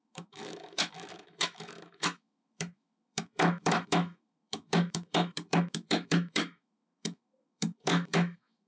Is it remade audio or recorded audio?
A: remade